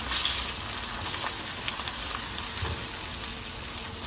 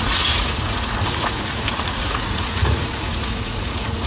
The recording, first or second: first